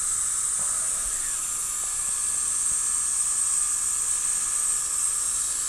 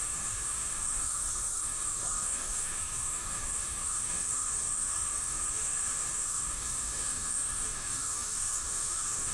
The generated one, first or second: second